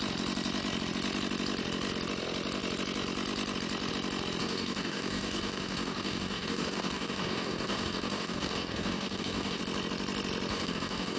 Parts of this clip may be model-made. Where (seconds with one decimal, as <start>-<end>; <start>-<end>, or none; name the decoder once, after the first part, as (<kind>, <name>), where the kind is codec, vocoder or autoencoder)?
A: 4.4-9.6 (codec, DAC); 10.5-11.2